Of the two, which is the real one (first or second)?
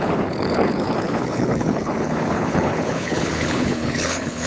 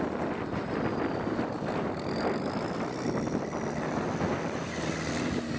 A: second